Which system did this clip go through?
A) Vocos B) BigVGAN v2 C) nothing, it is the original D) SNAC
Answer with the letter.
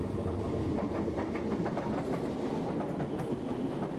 C